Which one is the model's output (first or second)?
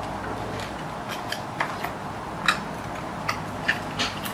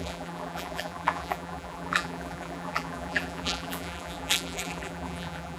second